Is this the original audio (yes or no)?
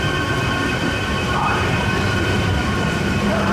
no